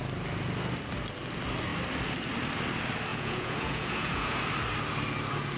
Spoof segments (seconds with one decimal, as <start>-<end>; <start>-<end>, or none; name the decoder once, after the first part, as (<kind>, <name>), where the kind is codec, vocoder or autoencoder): 3.1-4.4 (vocoder, Vocos)